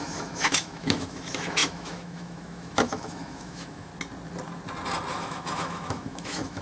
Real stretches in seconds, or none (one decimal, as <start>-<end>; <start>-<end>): 3.9-5.1